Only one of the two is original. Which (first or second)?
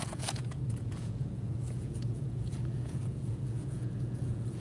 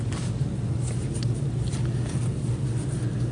second